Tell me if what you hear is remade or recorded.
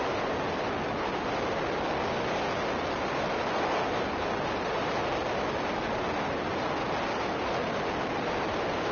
recorded